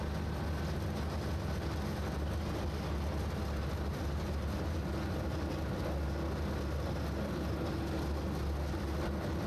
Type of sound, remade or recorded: recorded